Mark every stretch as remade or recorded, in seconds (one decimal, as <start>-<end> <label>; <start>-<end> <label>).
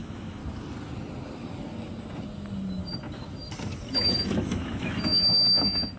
0.0-0.4 remade; 0.4-4.0 recorded; 4.0-6.0 remade